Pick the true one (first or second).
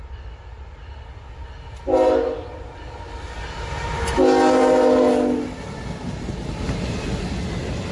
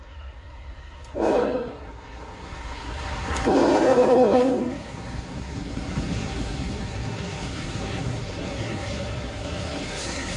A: first